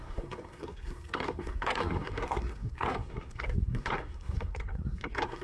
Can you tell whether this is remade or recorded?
remade